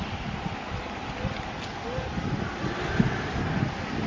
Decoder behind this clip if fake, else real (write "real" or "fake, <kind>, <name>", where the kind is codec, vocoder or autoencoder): real